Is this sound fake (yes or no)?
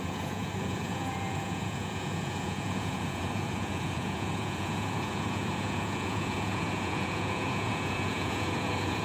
yes